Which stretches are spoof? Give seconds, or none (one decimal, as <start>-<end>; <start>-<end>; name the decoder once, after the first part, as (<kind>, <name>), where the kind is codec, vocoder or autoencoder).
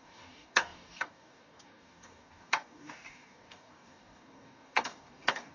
0.0-5.5 (codec, DAC)